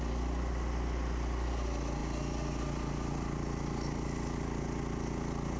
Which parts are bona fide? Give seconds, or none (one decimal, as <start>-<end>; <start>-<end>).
0.0-5.6